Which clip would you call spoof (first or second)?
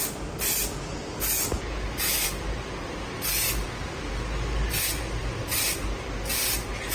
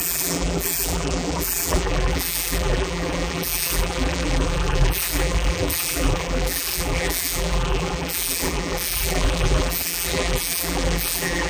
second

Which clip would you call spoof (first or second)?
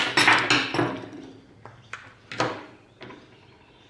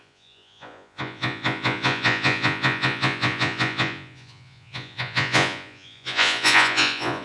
second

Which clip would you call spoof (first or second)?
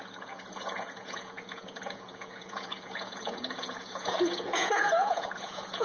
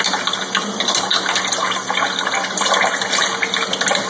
first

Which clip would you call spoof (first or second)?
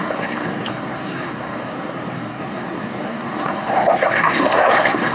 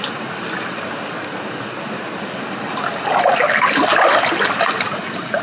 first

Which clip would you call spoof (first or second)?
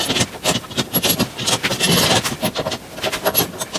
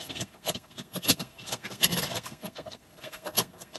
second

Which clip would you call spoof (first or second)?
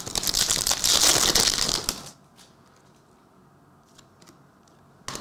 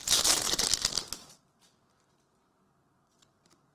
second